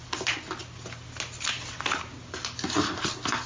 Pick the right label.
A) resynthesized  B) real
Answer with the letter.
B